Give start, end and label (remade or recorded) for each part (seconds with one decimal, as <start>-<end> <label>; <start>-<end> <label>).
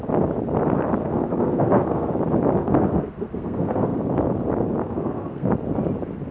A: 0.0-1.0 recorded; 1.0-2.1 remade; 2.1-2.6 recorded; 2.6-4.0 remade; 4.0-4.8 recorded; 4.8-5.5 remade; 5.5-6.3 recorded